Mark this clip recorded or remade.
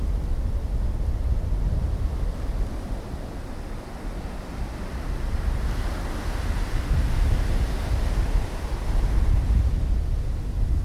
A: recorded